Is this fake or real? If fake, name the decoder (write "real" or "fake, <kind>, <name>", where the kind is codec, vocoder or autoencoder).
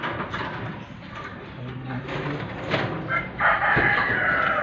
real